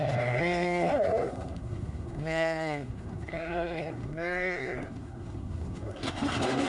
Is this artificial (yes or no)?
yes